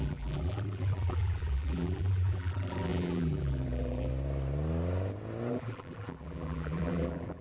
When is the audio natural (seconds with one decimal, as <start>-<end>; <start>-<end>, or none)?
4.1-5.5